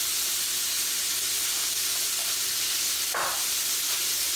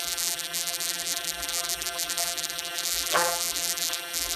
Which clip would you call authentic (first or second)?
first